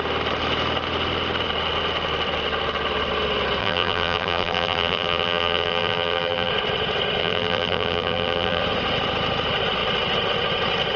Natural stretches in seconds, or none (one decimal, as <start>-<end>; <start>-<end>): 0.0-3.6; 6.5-7.2; 8.6-11.0